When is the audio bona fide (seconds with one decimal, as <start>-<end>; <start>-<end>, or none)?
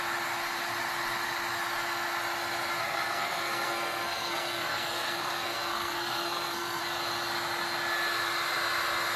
0.0-2.8; 6.8-9.2